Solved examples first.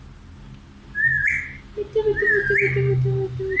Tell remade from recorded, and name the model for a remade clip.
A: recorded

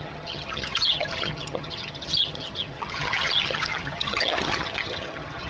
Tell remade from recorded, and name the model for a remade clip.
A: remade, vocoder, HiFi-GAN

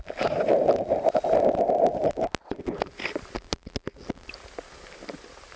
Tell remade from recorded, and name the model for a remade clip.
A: recorded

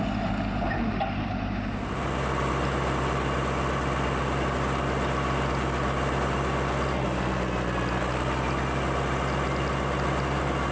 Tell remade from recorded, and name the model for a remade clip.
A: recorded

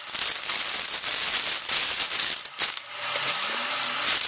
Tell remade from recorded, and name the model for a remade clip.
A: recorded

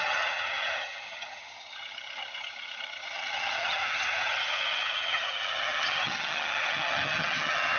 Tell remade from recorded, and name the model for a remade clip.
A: remade, vocoder, HiFi-GAN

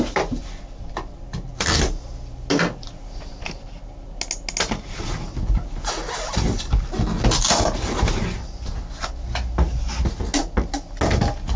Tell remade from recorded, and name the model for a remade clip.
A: recorded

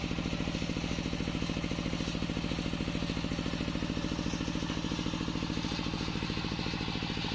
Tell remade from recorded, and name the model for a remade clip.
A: recorded